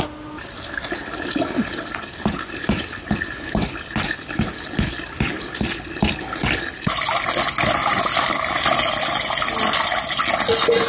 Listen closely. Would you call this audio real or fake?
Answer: real